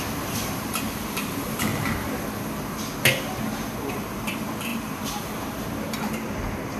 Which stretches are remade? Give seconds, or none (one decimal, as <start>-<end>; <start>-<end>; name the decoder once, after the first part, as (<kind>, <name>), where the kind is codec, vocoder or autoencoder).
0.0-1.7 (vocoder, BigVGAN v2); 3.9-6.8